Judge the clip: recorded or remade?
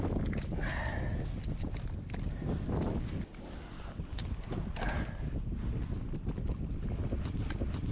recorded